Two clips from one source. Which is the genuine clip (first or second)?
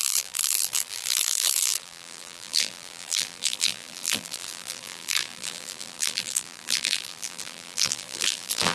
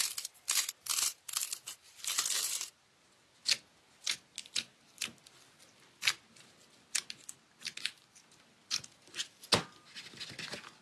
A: second